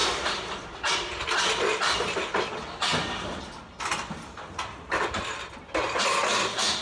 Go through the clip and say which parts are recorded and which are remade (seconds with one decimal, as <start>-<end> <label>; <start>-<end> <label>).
0.0-0.9 remade; 0.9-6.8 recorded